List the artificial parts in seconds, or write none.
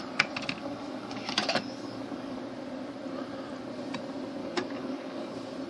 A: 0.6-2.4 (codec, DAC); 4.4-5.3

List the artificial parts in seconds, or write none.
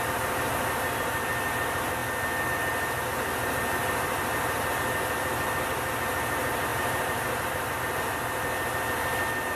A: 6.7-7.8 (vocoder, BigVGAN v2)